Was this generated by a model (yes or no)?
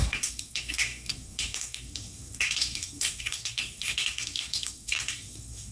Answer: yes